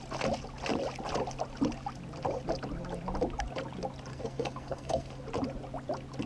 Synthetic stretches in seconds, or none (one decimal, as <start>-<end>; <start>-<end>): 4.1-5.2